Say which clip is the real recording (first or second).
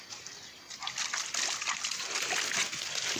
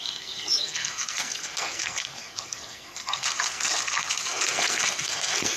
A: first